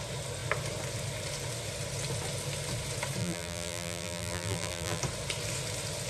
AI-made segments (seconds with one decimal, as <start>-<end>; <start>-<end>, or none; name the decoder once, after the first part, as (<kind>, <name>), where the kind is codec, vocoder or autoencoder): 3.2-5.0 (vocoder, BigVGAN v2)